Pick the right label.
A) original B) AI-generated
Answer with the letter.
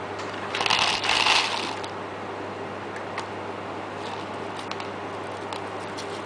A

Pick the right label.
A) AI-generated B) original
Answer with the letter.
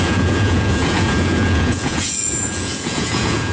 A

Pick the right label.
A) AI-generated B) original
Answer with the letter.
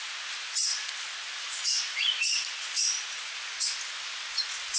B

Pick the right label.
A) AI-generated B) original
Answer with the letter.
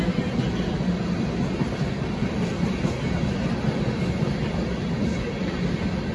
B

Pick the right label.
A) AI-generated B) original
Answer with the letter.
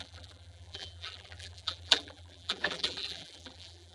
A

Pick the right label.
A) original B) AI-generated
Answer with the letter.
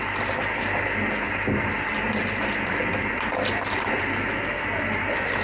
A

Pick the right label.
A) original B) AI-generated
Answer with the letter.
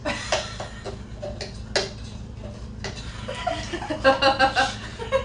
A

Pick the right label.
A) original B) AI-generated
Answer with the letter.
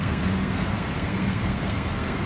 B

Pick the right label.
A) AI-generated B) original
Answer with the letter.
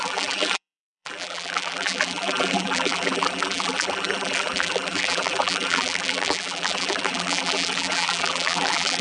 A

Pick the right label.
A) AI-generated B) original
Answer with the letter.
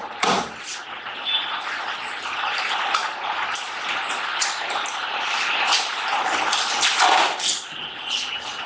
B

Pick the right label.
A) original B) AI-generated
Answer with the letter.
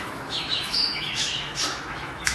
B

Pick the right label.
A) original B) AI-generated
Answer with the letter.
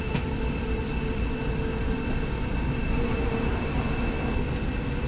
A